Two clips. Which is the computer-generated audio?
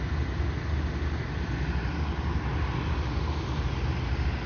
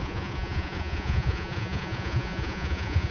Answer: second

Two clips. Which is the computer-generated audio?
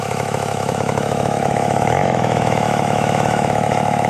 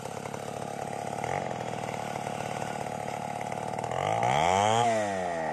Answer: first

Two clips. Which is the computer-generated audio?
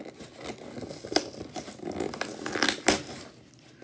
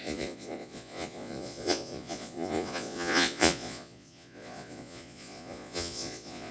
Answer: second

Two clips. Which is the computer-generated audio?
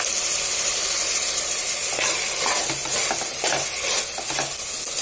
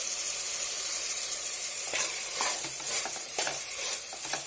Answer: second